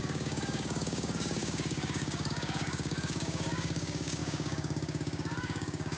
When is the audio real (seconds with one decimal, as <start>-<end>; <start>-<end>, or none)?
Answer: none